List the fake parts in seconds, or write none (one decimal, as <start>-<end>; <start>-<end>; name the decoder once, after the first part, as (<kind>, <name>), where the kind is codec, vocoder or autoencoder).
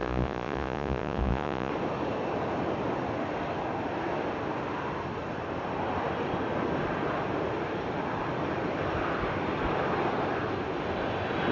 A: 0.0-1.7 (vocoder, Vocos)